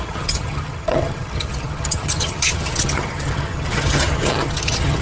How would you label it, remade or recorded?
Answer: remade